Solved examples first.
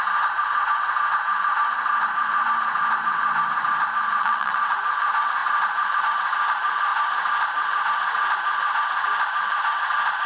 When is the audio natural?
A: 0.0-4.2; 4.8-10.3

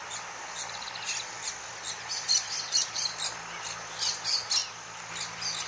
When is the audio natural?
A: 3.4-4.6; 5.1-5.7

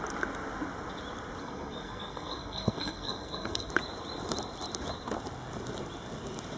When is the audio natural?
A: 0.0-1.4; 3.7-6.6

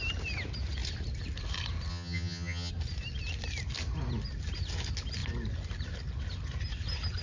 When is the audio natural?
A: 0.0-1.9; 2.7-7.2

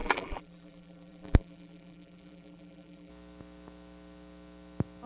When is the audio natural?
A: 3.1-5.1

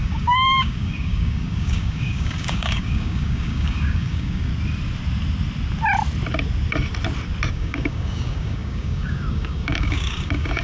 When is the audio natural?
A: 4.5-7.5